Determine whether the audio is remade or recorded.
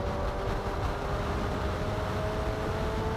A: recorded